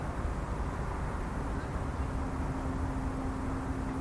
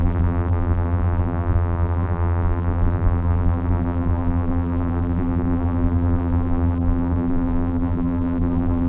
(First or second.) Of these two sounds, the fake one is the second